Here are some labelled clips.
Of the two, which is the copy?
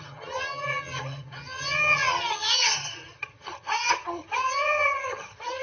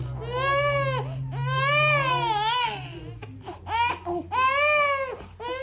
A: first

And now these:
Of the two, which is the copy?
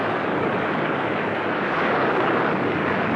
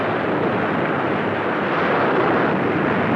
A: first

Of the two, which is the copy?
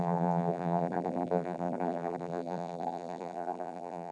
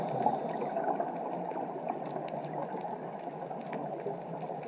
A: first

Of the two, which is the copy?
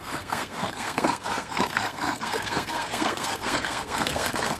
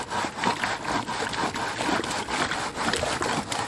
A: first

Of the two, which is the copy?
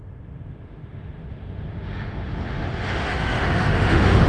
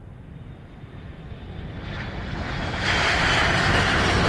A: first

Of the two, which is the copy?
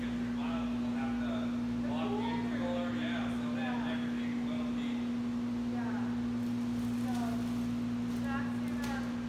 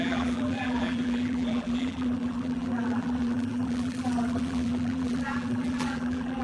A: second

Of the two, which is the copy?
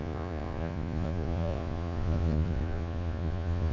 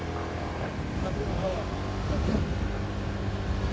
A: first